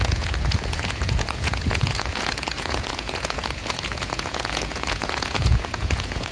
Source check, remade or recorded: remade